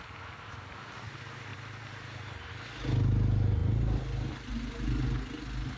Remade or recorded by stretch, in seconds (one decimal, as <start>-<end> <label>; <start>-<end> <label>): 0.0-1.5 recorded; 1.5-2.5 remade; 2.5-5.8 recorded